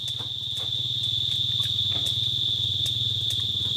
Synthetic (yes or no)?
no